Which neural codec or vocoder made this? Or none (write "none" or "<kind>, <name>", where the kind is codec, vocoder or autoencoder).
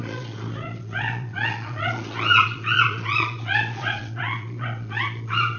vocoder, Vocos